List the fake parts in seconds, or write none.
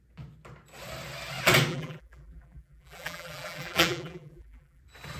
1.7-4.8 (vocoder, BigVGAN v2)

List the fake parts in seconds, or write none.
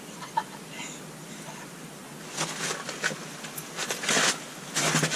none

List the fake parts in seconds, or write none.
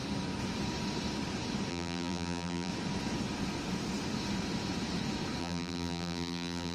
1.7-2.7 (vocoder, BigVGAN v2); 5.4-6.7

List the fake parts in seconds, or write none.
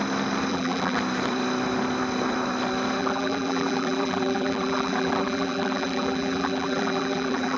0.5-1.0 (vocoder, BigVGAN v2); 3.0-7.6